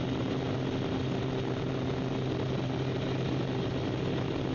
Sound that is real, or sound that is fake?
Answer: real